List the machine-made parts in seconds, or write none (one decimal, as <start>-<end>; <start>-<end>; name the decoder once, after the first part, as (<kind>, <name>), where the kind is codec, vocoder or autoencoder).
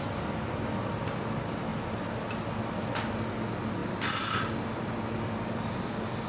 none